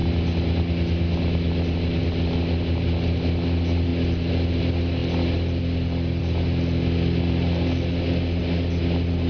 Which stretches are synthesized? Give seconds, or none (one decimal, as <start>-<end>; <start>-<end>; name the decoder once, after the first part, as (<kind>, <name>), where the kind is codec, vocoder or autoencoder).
none